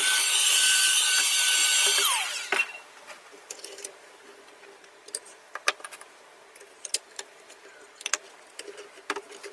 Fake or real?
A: fake